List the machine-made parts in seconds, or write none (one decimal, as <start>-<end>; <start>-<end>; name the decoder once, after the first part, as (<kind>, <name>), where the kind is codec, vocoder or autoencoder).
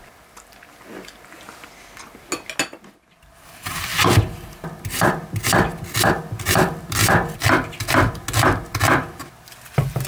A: none